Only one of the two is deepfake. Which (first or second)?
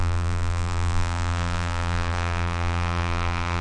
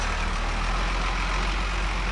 first